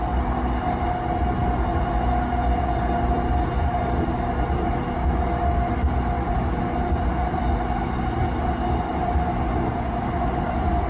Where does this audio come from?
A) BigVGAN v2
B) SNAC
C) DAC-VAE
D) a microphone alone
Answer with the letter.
D